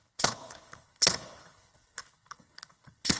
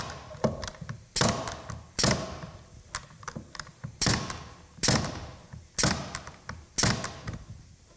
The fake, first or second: first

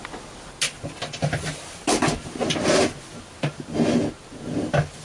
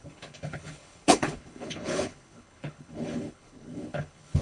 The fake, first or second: second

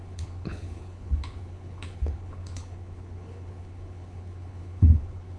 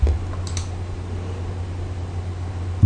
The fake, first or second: first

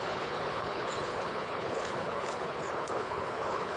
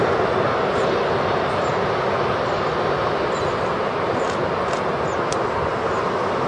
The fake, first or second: first